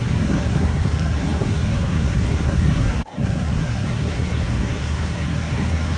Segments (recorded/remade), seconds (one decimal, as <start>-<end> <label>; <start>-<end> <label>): 0.0-6.0 remade